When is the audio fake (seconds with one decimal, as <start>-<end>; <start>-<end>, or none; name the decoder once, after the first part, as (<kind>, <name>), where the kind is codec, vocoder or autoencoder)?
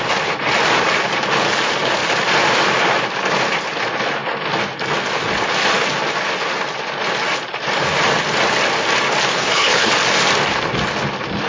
9.3-9.9 (codec, HILCodec)